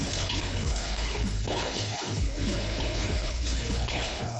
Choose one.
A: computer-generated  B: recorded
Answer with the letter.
A